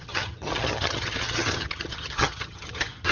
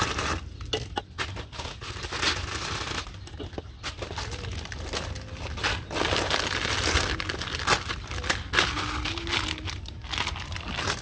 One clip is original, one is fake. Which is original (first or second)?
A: second